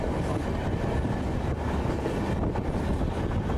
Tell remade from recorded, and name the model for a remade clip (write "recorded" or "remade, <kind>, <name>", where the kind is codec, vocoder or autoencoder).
recorded